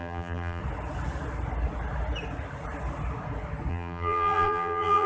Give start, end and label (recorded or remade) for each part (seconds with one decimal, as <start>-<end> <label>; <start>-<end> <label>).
0.0-0.6 remade; 0.6-3.7 recorded; 3.7-5.1 remade